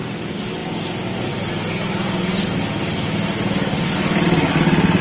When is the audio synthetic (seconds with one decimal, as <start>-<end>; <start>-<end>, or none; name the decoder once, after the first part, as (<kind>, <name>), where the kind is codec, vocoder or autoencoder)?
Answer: none